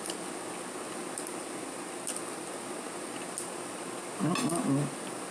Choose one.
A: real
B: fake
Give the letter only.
A